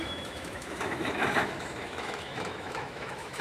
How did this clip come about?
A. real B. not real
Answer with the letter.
B